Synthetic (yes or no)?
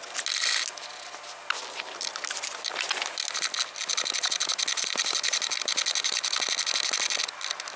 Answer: no